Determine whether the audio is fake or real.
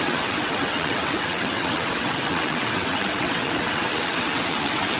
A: fake